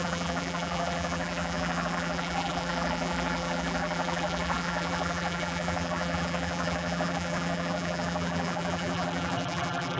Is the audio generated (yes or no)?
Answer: yes